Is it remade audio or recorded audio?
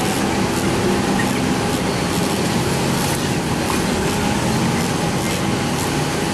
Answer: recorded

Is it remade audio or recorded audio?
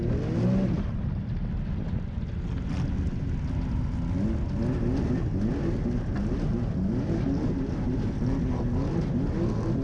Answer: recorded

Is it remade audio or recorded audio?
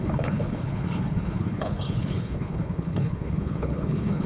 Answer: remade